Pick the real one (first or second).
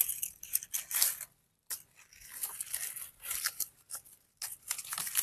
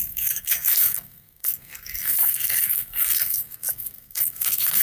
first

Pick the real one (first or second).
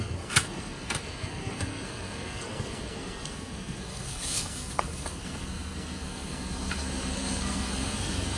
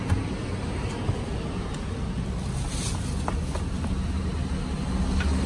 second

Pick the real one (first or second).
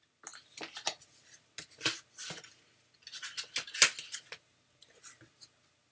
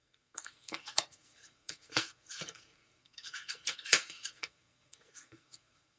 first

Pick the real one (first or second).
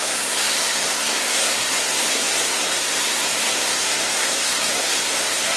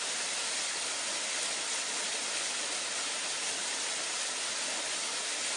second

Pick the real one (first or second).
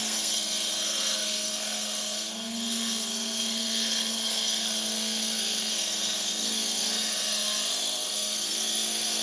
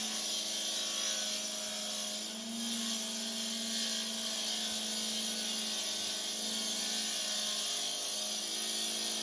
second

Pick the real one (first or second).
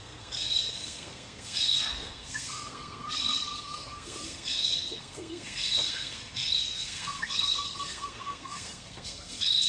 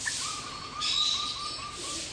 second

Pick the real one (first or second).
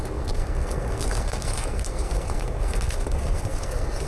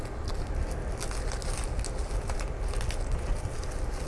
second